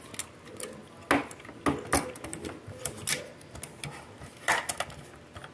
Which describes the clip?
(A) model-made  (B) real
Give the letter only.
B